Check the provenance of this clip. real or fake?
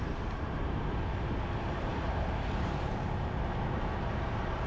fake